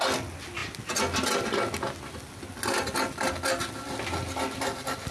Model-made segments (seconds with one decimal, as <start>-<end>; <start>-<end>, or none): none